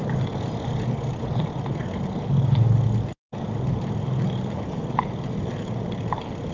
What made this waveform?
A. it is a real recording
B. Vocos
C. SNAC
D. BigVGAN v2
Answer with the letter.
A